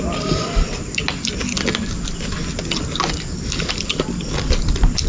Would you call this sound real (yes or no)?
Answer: yes